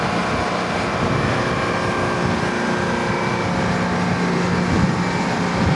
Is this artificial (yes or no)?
no